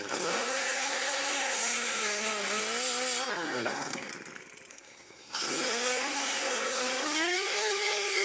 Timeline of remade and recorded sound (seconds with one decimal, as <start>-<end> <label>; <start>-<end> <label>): 0.0-2.6 remade; 2.6-3.3 recorded; 3.3-4.1 remade; 4.1-4.7 recorded; 4.7-8.2 remade